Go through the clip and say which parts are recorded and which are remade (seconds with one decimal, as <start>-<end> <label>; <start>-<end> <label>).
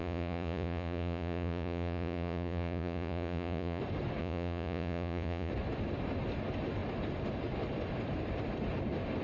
0.0-3.8 remade; 3.8-4.2 recorded; 4.2-5.5 remade; 5.5-9.2 recorded